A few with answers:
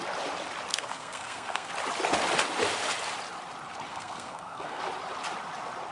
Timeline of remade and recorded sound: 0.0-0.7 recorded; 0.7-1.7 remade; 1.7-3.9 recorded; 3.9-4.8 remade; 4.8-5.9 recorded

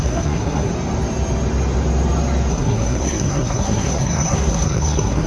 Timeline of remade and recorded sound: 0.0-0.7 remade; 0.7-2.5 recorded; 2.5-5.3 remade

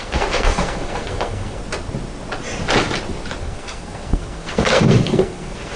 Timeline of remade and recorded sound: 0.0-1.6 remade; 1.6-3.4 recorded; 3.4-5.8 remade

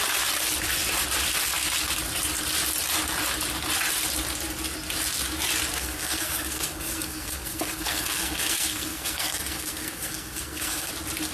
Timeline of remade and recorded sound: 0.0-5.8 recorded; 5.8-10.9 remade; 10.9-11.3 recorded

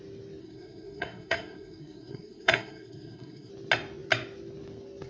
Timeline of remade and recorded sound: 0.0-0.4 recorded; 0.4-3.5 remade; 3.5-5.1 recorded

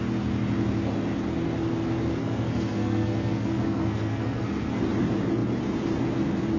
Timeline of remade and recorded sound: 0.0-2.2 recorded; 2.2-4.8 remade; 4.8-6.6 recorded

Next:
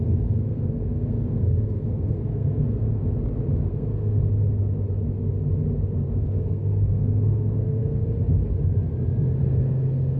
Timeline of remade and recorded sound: 0.0-3.0 remade; 3.0-3.6 recorded; 3.6-4.2 remade; 4.2-6.2 recorded; 6.2-7.8 remade; 7.8-9.4 recorded; 9.4-10.2 remade